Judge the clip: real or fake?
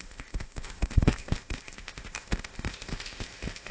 fake